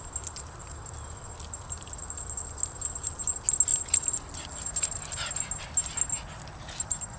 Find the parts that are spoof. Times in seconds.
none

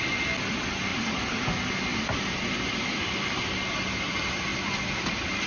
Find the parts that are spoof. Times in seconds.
0.9-3.5 (vocoder, BigVGAN v2); 4.5-5.1

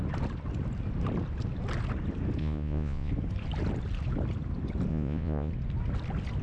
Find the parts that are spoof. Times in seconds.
2.4-3.1 (vocoder, Vocos); 4.9-5.5

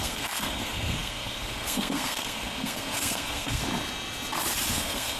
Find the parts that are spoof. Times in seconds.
0.0-3.6 (codec, SNAC); 4.7-5.2